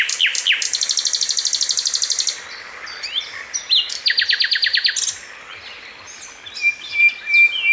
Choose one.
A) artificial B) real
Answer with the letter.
B